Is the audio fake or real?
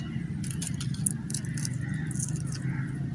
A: real